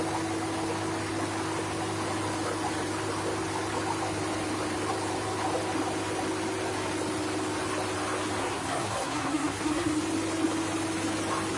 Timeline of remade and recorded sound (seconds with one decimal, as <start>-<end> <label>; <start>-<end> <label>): 0.0-8.4 recorded; 8.4-10.0 remade; 10.0-11.6 recorded